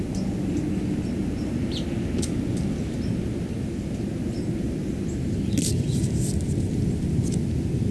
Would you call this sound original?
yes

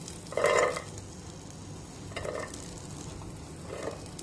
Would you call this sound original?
yes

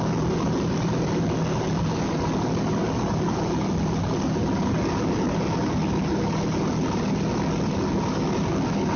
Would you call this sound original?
yes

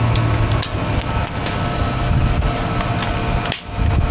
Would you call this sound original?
yes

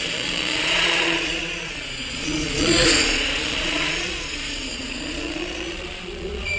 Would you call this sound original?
no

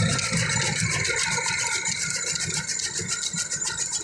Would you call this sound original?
no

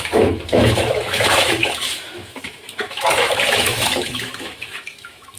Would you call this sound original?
no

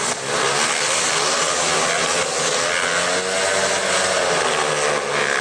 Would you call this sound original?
yes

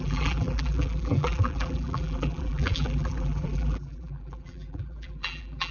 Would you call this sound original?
no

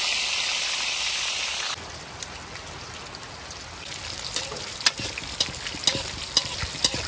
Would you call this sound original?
yes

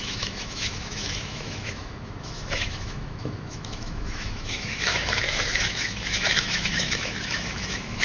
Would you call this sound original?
no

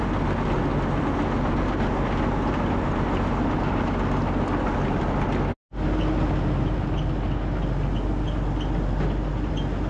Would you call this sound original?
yes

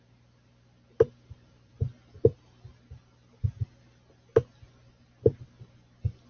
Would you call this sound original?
yes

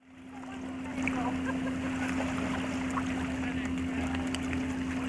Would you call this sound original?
yes